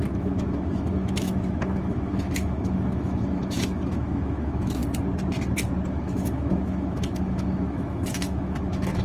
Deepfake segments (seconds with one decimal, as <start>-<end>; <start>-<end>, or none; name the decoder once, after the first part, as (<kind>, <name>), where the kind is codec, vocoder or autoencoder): 0.0-4.8 (autoencoder, DAC-VAE); 5.9-9.0